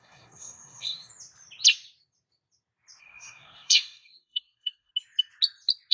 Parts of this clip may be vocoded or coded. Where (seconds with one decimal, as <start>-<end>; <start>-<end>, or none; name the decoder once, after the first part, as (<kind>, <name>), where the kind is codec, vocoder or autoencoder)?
0.0-1.1 (codec, SNAC); 3.0-4.9